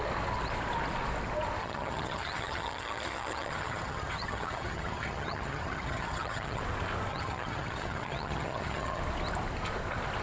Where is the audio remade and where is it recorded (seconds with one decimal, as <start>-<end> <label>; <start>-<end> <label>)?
0.0-1.6 recorded; 1.6-6.6 remade; 6.6-7.1 recorded; 7.1-9.0 remade; 9.0-10.2 recorded